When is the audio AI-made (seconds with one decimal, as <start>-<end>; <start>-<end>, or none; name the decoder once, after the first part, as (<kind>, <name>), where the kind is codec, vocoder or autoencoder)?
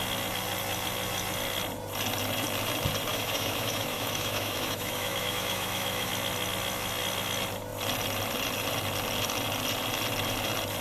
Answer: 3.1-6.1 (autoencoder, DAC-VAE)